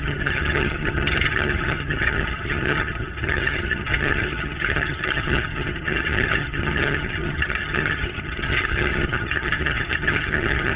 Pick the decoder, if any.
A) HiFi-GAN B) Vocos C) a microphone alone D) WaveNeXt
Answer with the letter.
A